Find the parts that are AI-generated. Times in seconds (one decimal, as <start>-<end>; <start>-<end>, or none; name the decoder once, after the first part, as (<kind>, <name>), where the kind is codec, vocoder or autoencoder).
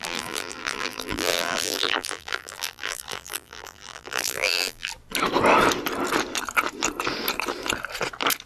0.0-4.9 (vocoder, BigVGAN v2)